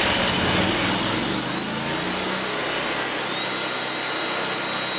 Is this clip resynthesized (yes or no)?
no